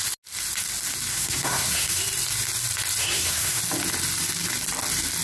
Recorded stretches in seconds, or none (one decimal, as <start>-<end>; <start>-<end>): 0.0-1.1; 2.0-3.0; 3.6-5.2